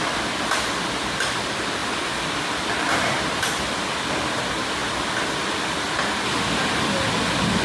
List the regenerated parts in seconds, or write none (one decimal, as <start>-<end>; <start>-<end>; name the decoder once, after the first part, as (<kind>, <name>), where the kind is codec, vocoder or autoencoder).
1.8-3.4 (vocoder, BigVGAN v2)

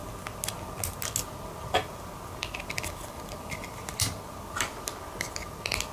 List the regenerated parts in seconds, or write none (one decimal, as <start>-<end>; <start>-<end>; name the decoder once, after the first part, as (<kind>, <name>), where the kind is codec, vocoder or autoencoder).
none

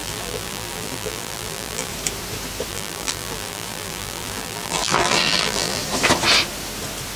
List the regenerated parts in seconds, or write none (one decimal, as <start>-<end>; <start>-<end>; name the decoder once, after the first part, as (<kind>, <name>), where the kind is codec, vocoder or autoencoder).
0.0-1.9 (vocoder, BigVGAN v2); 2.7-5.8

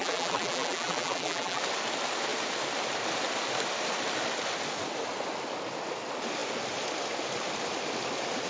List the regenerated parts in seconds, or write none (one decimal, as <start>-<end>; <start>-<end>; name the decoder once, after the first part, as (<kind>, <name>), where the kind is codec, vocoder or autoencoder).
0.0-1.6 (vocoder, BigVGAN v2)